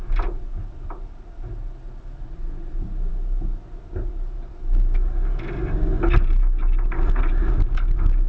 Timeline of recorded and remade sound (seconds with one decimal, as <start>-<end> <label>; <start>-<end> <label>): 0.0-8.3 recorded